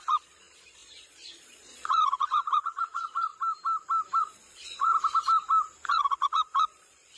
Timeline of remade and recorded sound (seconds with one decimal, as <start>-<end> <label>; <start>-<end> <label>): 0.0-3.3 remade; 3.3-4.2 recorded; 4.2-4.9 remade; 4.9-5.9 recorded; 5.9-7.2 remade